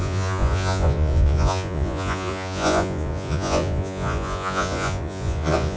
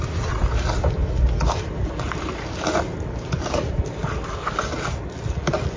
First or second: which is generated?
first